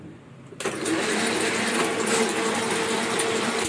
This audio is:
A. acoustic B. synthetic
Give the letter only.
A